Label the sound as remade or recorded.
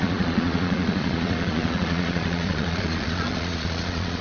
remade